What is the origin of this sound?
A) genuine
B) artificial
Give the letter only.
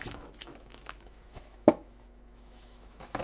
B